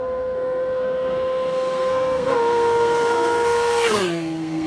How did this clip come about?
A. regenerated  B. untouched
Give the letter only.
A